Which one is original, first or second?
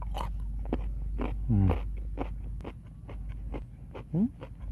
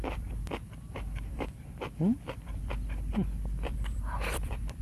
first